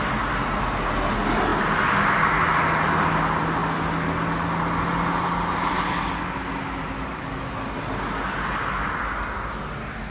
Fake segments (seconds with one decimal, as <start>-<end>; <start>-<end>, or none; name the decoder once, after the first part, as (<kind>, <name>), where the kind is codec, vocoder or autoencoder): none